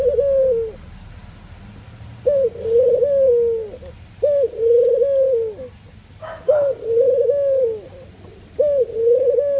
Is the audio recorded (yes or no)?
yes